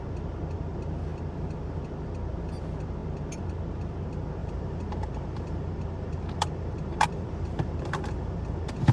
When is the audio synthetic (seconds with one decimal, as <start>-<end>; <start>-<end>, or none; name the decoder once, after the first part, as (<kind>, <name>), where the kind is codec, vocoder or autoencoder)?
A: 4.4-8.9 (vocoder, BigVGAN v2)